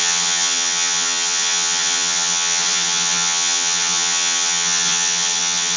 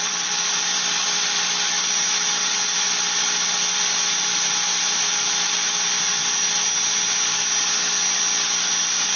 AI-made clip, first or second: first